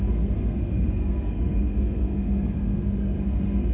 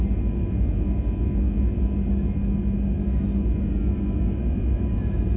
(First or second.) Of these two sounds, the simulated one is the first